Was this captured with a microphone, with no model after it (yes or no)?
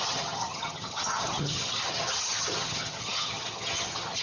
no